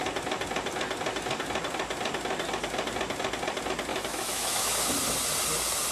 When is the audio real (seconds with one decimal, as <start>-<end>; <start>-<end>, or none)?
0.0-3.9; 4.9-5.9